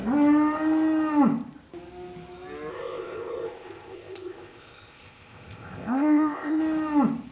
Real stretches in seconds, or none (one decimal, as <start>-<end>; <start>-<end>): 0.0-2.7; 6.6-7.3